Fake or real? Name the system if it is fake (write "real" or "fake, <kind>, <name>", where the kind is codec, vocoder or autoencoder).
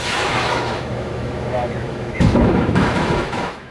fake, autoencoder, DAC-VAE